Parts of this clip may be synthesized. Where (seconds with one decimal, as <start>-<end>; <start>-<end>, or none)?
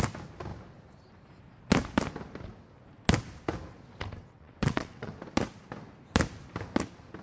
4.2-5.1